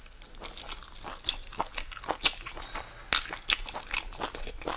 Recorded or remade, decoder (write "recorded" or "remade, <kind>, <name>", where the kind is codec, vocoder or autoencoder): recorded